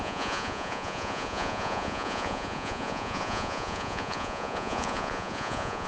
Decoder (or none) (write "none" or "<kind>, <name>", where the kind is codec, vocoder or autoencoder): vocoder, Vocos